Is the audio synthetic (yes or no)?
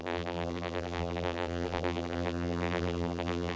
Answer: yes